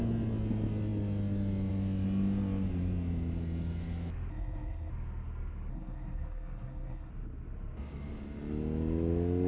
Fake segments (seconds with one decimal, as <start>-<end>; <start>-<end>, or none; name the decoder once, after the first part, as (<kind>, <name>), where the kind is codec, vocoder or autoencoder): 4.3-4.9 (codec, SNAC); 5.7-7.1